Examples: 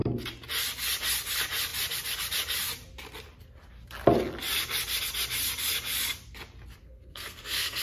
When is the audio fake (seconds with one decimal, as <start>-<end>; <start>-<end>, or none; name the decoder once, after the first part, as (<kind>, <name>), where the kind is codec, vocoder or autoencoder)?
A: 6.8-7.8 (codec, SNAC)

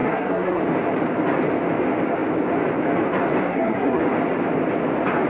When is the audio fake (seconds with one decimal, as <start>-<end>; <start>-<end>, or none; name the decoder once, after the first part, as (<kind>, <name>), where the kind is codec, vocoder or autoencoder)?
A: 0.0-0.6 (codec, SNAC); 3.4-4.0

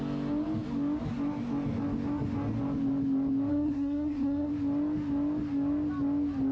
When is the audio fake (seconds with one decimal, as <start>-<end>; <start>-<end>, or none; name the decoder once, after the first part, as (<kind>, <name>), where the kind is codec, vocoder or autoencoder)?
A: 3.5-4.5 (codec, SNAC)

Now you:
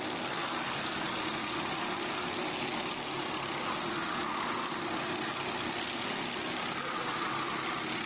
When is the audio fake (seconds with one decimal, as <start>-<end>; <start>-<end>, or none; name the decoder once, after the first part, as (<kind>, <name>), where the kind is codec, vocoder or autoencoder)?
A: none

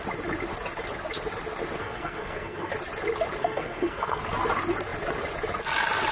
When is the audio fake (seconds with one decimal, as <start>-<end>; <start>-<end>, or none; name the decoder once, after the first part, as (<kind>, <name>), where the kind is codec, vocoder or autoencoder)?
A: 1.8-2.7 (codec, SNAC); 3.4-4.2

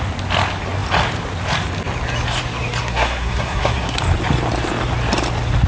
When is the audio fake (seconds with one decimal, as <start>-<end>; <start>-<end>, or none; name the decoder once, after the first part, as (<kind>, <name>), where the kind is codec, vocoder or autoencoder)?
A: 2.8-4.0 (codec, SNAC)

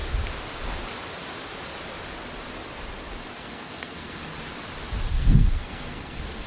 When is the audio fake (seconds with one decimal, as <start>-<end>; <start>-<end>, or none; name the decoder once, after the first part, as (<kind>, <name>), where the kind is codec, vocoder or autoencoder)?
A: 3.4-4.3 (codec, SNAC); 5.1-6.5

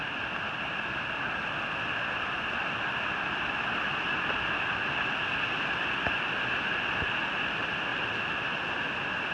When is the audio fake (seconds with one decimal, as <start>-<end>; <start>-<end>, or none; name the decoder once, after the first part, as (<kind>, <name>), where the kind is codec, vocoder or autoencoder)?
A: none